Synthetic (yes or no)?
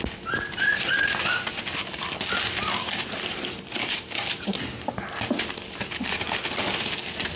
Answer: no